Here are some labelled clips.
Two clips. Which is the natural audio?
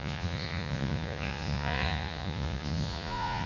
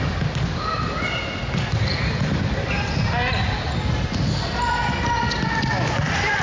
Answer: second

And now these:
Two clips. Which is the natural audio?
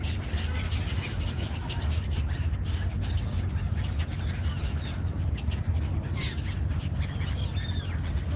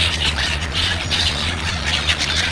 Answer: first